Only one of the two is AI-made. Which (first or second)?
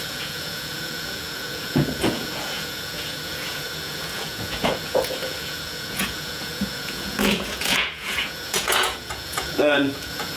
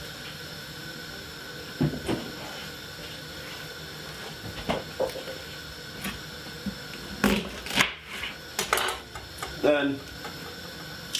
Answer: first